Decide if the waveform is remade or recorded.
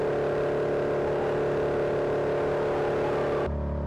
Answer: recorded